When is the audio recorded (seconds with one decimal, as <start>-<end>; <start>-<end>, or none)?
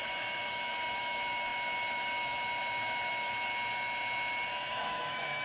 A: 3.5-4.7